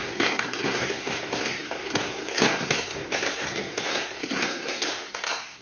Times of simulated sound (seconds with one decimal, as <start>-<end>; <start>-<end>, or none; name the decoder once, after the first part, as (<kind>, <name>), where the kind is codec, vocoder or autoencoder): 0.0-5.6 (codec, SNAC)